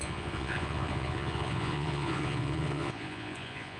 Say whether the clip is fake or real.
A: fake